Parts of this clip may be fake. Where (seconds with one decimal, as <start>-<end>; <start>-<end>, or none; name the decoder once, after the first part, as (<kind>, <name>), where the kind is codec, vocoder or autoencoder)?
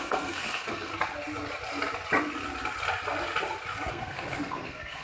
0.0-0.9 (codec, SNAC); 3.9-5.0